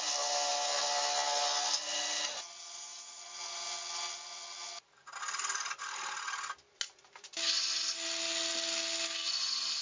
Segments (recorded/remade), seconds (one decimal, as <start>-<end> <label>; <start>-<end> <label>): 0.0-9.8 recorded